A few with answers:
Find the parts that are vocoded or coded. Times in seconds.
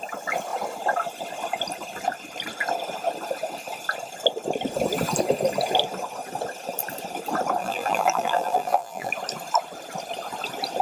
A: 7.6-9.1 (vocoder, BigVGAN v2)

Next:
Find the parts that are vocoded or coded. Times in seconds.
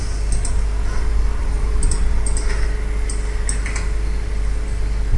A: 1.4-2.0 (vocoder, BigVGAN v2)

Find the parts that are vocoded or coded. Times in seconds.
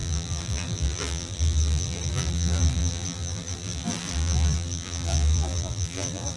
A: 0.0-6.4 (vocoder, BigVGAN v2)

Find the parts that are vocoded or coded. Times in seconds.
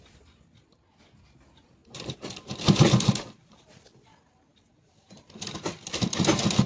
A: 1.8-3.8 (vocoder, BigVGAN v2); 4.5-6.2